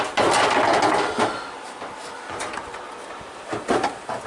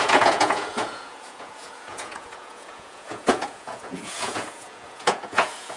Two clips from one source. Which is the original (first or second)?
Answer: first